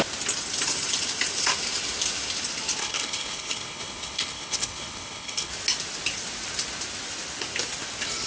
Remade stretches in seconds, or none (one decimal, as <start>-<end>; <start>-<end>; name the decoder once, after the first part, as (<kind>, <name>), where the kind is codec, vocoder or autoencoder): 2.8-5.5 (codec, HILCodec)